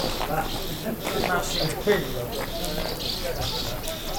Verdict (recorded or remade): recorded